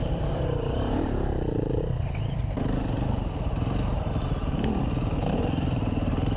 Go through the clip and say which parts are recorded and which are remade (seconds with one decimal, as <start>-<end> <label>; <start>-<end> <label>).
0.0-1.8 remade; 1.8-6.4 recorded